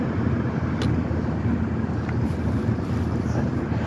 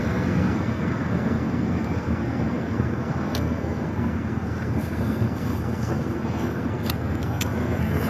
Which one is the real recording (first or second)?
first